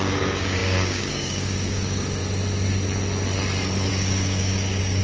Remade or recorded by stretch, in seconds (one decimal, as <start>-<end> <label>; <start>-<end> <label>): 0.0-2.2 remade; 2.2-3.9 recorded; 3.9-5.0 remade